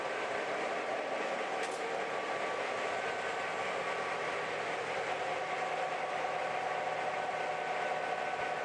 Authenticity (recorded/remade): recorded